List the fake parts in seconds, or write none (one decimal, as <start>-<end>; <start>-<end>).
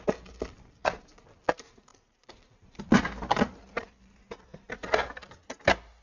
none